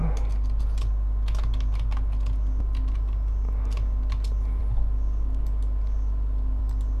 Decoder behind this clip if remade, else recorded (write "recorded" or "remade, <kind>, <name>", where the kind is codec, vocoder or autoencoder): recorded